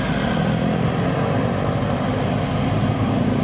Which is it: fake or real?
real